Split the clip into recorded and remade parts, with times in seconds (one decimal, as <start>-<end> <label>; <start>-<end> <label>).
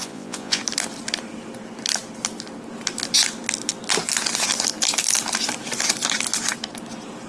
0.0-0.6 remade; 0.6-7.3 recorded